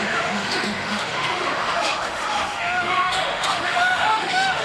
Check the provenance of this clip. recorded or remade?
remade